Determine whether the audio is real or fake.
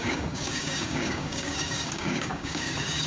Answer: fake